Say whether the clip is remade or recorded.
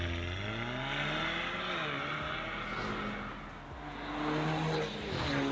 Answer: recorded